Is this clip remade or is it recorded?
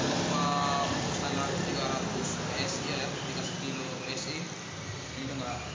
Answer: recorded